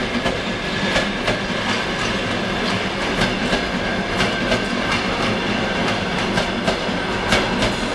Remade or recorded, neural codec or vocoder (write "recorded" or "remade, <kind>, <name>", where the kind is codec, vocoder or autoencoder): recorded